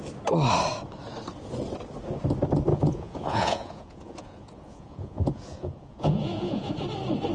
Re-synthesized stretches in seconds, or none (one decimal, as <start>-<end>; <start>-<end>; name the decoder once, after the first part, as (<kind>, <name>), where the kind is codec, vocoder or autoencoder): 2.7-6.7 (vocoder, Vocos)